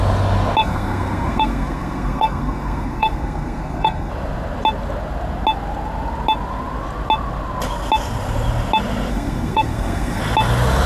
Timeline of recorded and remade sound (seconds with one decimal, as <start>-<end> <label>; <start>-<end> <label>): 0.0-0.6 recorded; 0.6-4.1 remade; 4.1-9.1 recorded; 9.1-10.2 remade; 10.2-10.9 recorded